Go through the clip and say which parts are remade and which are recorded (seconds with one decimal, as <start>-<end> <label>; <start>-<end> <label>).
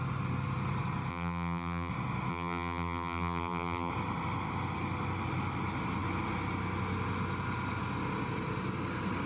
0.0-1.1 recorded; 1.1-1.9 remade; 1.9-2.3 recorded; 2.3-3.9 remade; 3.9-9.3 recorded